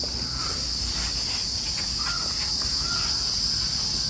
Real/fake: real